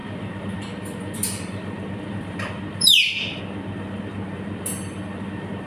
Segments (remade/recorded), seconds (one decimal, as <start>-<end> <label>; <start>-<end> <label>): 0.0-3.4 remade; 3.4-5.7 recorded